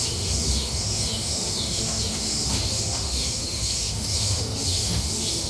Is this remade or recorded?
remade